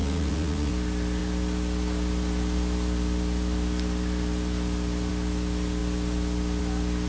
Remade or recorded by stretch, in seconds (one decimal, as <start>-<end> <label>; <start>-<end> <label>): 0.0-0.7 remade; 0.7-7.1 recorded